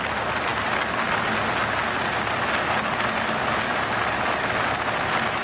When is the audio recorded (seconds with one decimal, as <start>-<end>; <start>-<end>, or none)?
0.0-5.4